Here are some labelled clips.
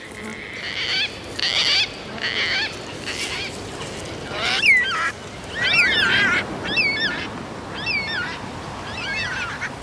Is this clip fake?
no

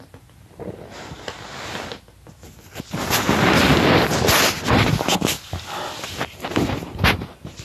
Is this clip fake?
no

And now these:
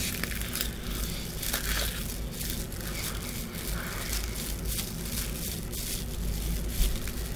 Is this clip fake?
no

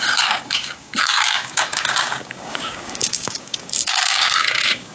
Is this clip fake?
yes